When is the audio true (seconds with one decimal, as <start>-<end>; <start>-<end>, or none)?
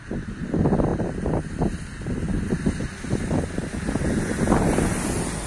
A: 0.0-5.5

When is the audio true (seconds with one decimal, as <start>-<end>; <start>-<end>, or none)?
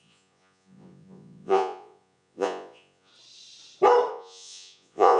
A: 3.1-4.1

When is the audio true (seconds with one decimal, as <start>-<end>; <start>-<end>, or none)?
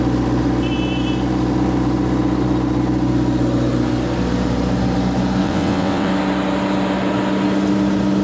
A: 0.0-5.4; 6.1-8.2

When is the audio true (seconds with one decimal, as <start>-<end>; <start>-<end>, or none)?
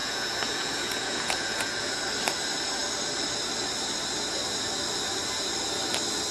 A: 2.0-6.3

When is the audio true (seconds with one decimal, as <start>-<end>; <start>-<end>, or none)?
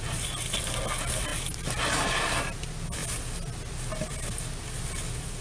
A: 0.0-5.4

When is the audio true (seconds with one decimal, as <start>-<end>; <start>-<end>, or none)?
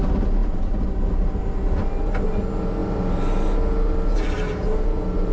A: 0.0-5.3